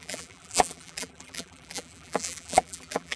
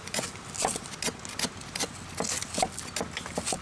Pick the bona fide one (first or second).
second